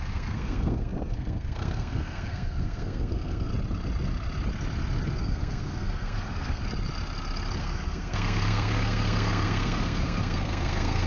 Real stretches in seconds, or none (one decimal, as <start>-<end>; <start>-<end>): 3.5-5.2; 6.6-7.6